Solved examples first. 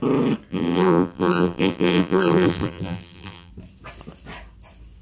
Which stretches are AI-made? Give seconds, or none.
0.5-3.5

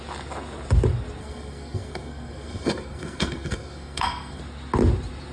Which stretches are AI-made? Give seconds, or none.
1.2-4.4

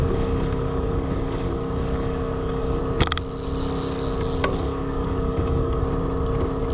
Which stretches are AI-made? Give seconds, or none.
0.0-2.8; 4.4-5.8

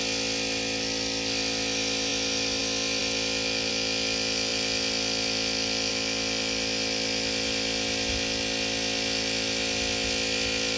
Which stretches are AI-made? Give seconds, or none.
none